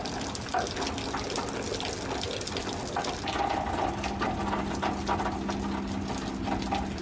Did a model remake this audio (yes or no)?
no